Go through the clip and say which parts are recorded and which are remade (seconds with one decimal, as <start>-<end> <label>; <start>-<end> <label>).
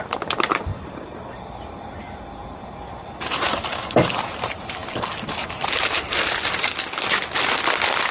0.0-6.7 remade; 6.7-8.1 recorded